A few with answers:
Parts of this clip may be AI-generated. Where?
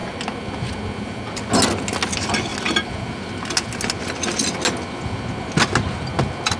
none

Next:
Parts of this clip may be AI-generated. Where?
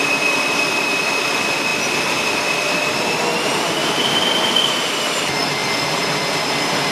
3.8-4.3 (vocoder, BigVGAN v2)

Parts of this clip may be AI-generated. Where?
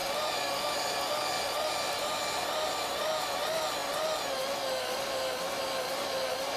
none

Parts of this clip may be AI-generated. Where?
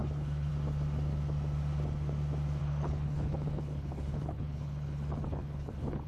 0.0-0.5 (codec, HILCodec); 2.6-6.1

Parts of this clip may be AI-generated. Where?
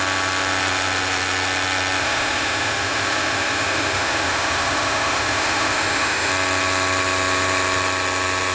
2.0-6.3 (autoencoder, DAC-VAE)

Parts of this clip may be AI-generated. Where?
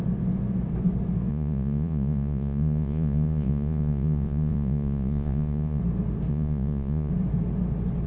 1.3-5.8 (vocoder, Vocos); 6.3-7.1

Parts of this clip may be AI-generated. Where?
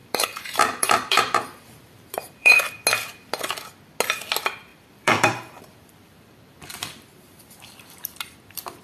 0.0-2.6 (vocoder, BigVGAN v2); 4.7-8.4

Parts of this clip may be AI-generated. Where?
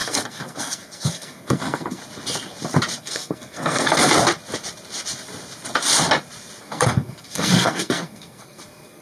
0.0-2.0 (codec, SNAC); 3.0-4.1; 6.6-9.0